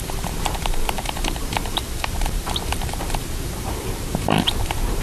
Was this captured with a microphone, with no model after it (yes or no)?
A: no